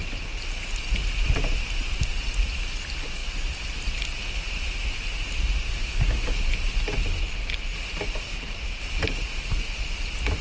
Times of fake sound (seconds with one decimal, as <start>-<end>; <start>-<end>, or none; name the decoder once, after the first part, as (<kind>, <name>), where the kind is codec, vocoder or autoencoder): 5.7-6.4 (codec, DAC)